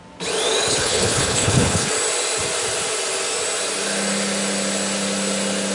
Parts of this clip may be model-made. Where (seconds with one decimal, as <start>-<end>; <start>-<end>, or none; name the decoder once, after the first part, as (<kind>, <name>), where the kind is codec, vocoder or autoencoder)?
0.7-1.9 (codec, HILCodec)